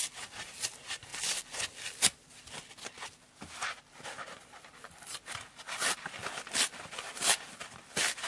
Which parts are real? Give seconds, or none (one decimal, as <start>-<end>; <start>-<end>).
0.0-8.3